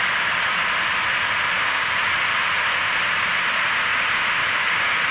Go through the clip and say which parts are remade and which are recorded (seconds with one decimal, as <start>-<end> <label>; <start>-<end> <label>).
0.0-0.6 remade; 0.6-3.3 recorded; 3.3-3.9 remade; 3.9-4.4 recorded; 4.4-5.1 remade